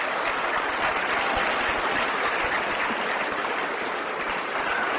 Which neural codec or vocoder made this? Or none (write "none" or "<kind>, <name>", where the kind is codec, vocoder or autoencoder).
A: none